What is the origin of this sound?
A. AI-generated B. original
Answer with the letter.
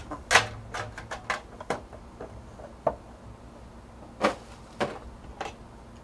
B